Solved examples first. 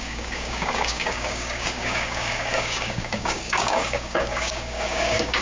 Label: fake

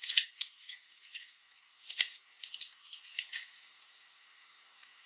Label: fake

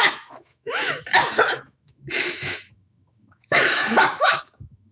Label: fake